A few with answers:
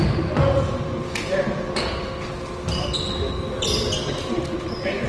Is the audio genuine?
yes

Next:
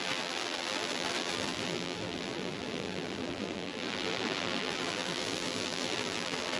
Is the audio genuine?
no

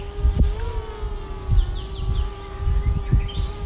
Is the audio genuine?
yes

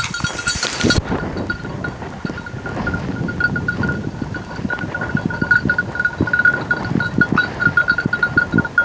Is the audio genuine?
yes